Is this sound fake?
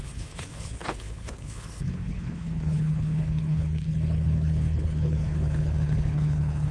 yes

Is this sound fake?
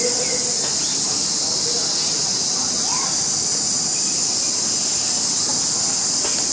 no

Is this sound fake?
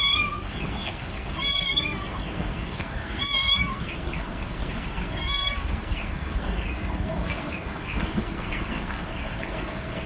yes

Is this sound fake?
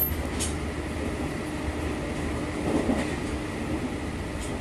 no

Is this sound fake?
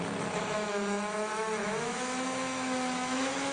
yes